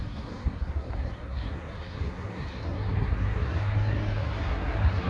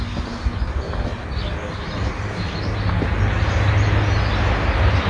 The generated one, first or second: first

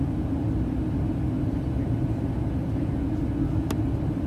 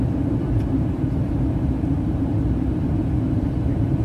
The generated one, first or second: second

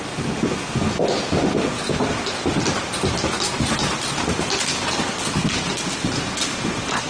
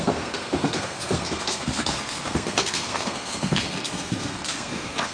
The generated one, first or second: second